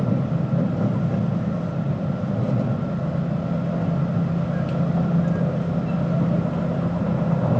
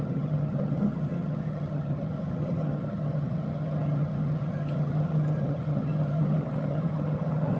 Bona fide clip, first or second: first